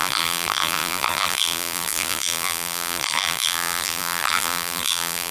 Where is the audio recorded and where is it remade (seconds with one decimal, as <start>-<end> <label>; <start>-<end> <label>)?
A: 0.0-5.3 remade